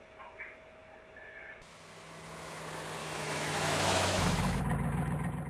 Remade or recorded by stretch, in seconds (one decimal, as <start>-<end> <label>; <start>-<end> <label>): 0.0-3.0 recorded; 3.0-4.6 remade; 4.6-5.5 recorded